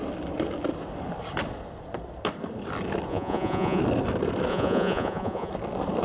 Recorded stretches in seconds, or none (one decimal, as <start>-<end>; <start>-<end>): 0.0-3.1; 3.8-4.5; 5.5-6.0